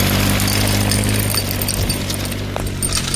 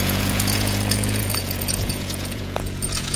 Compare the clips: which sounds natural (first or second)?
first